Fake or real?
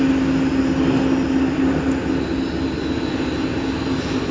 real